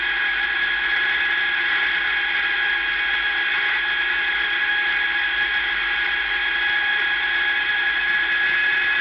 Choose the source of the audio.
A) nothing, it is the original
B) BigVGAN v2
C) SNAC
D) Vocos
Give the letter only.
A